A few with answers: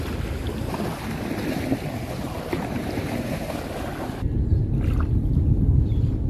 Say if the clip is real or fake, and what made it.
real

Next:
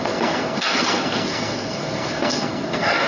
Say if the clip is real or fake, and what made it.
fake, codec, SNAC